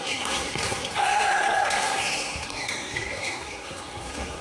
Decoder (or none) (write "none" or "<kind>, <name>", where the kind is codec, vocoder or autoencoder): codec, SNAC